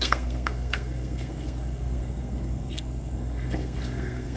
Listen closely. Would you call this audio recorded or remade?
remade